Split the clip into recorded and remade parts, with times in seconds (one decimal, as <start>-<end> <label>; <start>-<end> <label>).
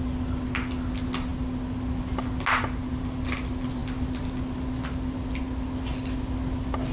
0.0-6.9 recorded